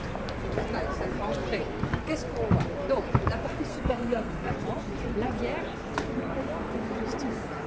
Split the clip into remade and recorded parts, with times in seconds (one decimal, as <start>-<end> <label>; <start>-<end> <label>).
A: 0.0-3.7 recorded; 3.7-4.5 remade; 4.5-7.7 recorded